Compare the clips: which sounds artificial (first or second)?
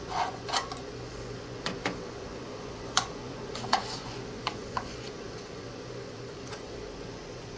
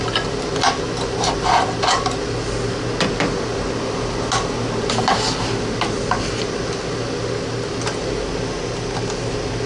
first